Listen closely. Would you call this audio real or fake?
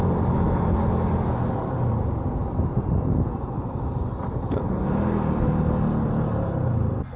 real